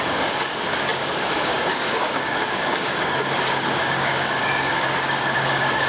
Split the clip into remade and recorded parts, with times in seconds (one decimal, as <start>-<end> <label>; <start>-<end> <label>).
0.0-5.9 remade